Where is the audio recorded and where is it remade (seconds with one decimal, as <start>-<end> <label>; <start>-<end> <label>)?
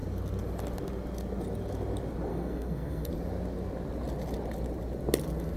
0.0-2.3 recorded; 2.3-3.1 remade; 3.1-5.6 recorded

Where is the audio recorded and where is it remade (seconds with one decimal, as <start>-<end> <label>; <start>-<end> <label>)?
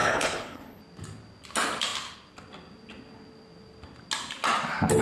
0.0-0.8 remade; 0.8-5.0 recorded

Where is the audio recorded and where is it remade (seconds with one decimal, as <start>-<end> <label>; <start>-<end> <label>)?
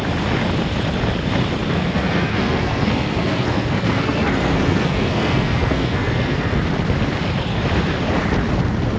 0.0-1.6 recorded; 1.6-6.6 remade; 6.6-9.0 recorded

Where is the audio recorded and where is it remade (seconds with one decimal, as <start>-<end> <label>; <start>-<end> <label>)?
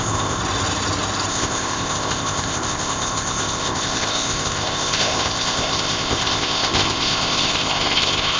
0.0-0.4 remade; 0.4-1.3 recorded; 1.3-8.4 remade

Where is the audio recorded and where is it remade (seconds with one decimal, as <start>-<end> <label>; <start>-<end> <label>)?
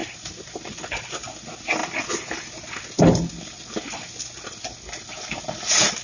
0.0-6.0 recorded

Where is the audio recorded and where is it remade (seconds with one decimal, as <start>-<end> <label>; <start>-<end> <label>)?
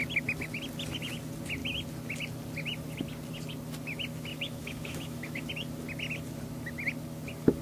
0.0-4.3 recorded; 4.3-5.5 remade; 5.5-7.6 recorded